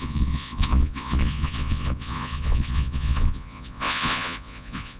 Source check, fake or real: fake